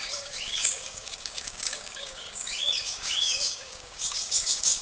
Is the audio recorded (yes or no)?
no